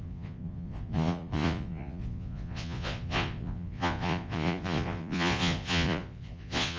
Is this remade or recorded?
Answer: remade